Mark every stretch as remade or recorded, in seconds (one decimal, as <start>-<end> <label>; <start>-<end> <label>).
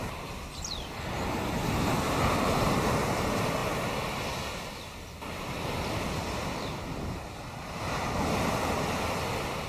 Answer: 0.0-9.7 recorded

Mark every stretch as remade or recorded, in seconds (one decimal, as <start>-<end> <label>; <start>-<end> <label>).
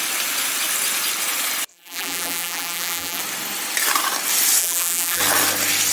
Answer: 0.0-1.7 recorded; 1.7-3.2 remade; 3.2-4.6 recorded; 4.6-5.2 remade; 5.2-5.9 recorded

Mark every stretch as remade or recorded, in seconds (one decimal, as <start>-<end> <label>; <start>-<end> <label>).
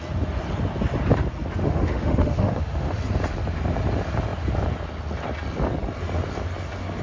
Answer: 0.0-1.6 recorded; 1.6-3.0 remade; 3.0-7.0 recorded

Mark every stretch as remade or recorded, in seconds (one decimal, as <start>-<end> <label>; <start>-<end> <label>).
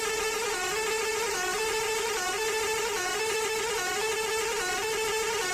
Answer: 0.0-5.5 remade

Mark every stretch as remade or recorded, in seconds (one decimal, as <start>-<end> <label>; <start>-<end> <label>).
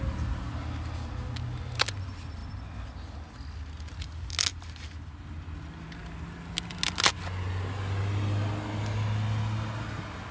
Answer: 0.0-4.5 recorded; 4.5-5.2 remade; 5.2-10.3 recorded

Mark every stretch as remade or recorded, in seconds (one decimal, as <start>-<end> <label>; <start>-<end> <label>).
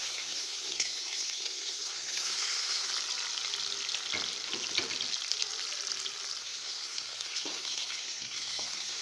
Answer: 0.0-2.9 remade; 2.9-6.4 recorded; 6.4-9.0 remade